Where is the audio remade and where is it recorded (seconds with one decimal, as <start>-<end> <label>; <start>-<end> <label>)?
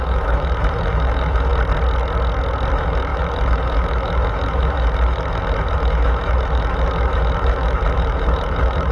0.0-1.5 remade; 1.5-2.7 recorded; 2.7-8.9 remade